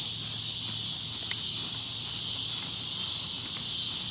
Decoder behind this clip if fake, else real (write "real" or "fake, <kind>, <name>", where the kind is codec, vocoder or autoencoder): real